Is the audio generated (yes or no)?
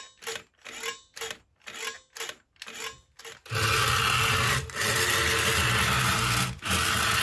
no